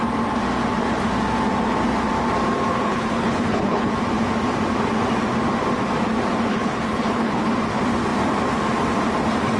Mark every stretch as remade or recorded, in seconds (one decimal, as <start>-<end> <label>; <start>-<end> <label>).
0.0-2.7 recorded; 2.7-3.9 remade; 3.9-6.5 recorded; 6.5-7.5 remade; 7.5-9.6 recorded